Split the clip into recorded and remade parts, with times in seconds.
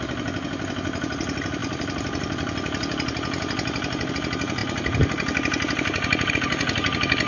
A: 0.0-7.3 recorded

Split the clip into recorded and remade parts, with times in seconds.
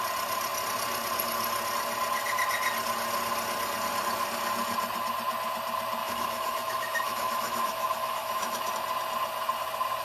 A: 0.0-6.0 recorded; 6.0-8.7 remade; 8.7-10.0 recorded